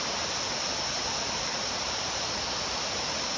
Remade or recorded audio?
recorded